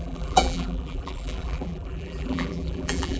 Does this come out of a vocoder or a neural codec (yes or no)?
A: yes